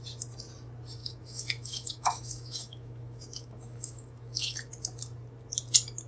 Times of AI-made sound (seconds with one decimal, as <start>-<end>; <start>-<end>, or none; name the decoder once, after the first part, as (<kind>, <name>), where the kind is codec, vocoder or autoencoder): 1.0-4.7 (autoencoder, DAC-VAE)